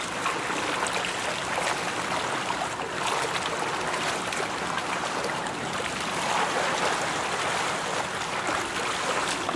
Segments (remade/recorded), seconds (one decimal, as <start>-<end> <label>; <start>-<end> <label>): 0.0-4.8 recorded; 4.8-5.7 remade; 5.7-9.6 recorded